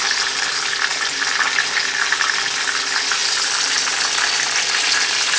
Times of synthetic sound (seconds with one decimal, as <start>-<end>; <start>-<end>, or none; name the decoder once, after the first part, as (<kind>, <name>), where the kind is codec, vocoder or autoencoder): none